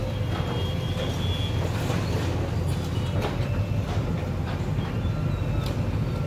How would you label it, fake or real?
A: real